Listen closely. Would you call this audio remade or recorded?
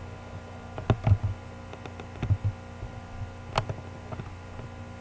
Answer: recorded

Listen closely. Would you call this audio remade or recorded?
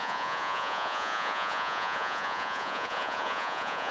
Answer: remade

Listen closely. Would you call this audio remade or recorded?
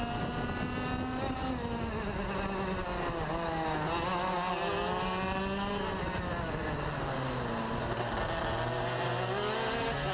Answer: recorded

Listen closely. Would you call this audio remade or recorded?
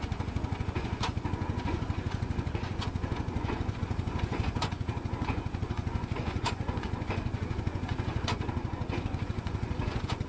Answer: remade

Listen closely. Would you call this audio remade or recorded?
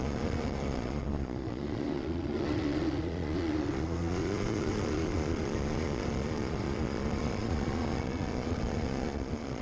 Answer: remade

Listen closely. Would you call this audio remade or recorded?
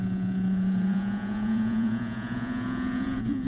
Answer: remade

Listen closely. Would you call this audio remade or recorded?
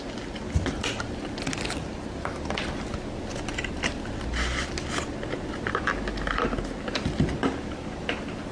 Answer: recorded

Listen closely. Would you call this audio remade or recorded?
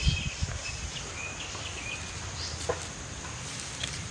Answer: recorded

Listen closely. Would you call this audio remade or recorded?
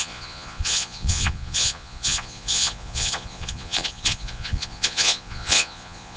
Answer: remade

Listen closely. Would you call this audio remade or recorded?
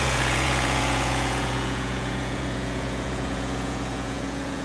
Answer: remade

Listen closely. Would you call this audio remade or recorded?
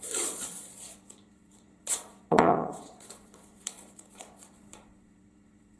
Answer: remade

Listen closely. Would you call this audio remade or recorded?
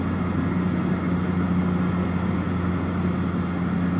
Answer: recorded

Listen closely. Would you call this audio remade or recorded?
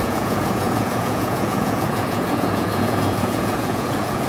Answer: remade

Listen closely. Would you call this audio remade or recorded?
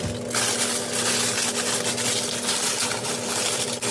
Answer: recorded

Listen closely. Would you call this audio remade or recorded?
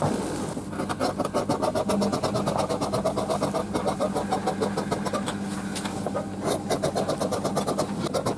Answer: recorded